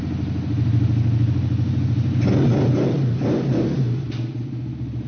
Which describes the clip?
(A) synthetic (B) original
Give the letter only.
B